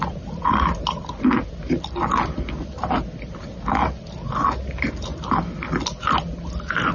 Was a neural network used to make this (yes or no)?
no